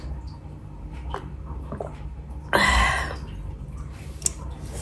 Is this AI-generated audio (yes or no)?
no